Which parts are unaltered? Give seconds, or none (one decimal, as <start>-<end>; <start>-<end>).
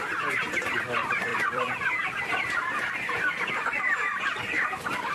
0.0-1.3; 4.2-5.1